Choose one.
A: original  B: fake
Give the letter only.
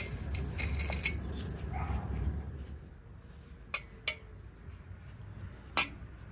A